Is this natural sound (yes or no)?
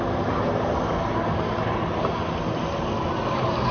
yes